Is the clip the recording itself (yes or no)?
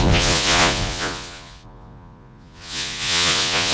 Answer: no